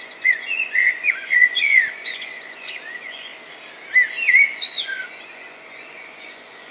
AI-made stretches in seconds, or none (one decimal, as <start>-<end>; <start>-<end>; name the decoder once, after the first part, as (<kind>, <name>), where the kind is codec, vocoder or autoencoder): 0.0-3.3 (vocoder, Vocos); 4.3-6.7